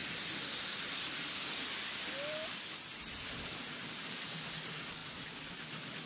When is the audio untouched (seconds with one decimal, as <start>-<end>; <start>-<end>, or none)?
0.0-6.1